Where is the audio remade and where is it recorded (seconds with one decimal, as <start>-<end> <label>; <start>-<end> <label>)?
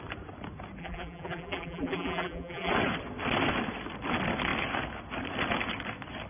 0.0-0.8 recorded; 0.8-2.7 remade; 2.7-6.3 recorded